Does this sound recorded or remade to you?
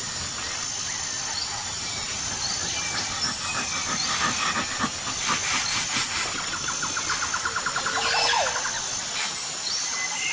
recorded